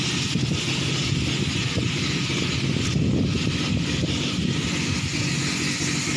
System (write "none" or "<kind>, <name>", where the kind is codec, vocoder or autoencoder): none